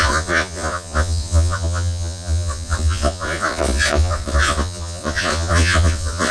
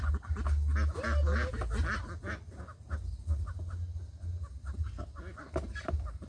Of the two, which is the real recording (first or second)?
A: second